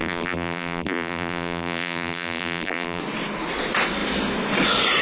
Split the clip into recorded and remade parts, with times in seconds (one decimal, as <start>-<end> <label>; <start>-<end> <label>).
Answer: 0.0-3.0 remade; 3.0-5.0 recorded

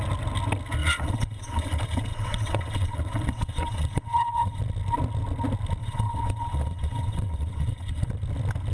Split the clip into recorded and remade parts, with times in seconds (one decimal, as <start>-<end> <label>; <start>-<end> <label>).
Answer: 0.0-0.8 recorded; 0.8-4.6 remade; 4.6-5.8 recorded; 5.8-8.1 remade; 8.1-8.7 recorded